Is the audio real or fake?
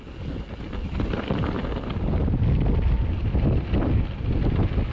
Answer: real